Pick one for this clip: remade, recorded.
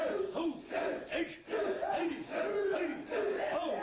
remade